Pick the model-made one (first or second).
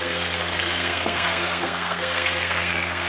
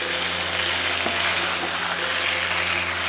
first